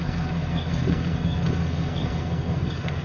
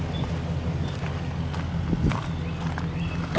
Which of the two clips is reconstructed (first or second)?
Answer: first